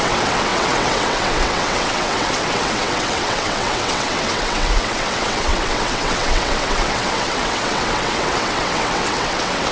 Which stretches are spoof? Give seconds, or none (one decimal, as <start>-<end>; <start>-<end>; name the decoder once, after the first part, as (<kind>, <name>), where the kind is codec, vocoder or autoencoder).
0.0-9.7 (vocoder, WaveNeXt)